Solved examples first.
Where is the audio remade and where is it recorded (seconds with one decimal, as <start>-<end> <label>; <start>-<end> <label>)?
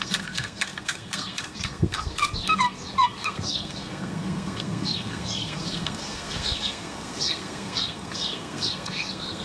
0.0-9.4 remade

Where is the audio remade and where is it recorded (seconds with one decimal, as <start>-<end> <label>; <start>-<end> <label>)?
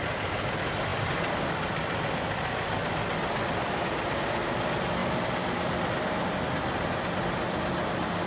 0.0-0.9 recorded; 0.9-2.9 remade; 2.9-5.0 recorded; 5.0-6.0 remade; 6.0-8.3 recorded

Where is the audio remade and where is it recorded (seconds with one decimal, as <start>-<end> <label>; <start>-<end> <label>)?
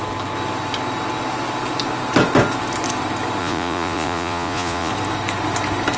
0.0-3.4 recorded; 3.4-4.9 remade; 4.9-6.0 recorded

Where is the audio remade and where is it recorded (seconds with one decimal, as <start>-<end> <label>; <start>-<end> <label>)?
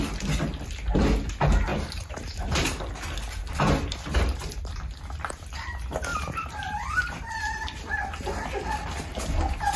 0.0-1.7 recorded; 1.7-2.4 remade; 2.4-6.1 recorded; 6.1-7.3 remade; 7.3-9.8 recorded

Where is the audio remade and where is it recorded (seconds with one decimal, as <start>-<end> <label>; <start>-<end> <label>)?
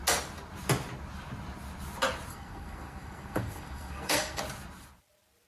0.0-2.3 recorded; 2.3-4.4 remade; 4.4-5.5 recorded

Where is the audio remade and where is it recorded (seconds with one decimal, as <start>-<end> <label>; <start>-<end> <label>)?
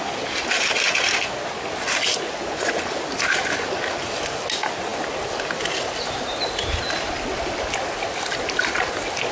0.0-9.3 recorded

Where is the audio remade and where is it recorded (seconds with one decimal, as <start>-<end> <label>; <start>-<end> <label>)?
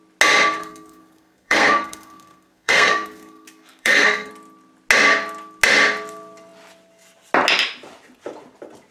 0.0-0.6 recorded; 0.6-4.3 remade; 4.3-8.9 recorded